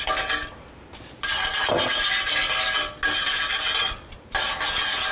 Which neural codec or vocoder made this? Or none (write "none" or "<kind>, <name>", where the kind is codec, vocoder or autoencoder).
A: none